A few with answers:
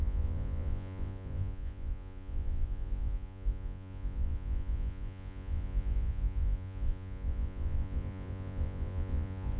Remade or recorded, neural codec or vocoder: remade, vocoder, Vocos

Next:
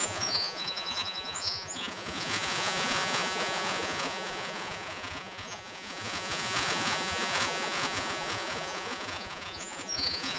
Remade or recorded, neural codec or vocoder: remade, vocoder, Vocos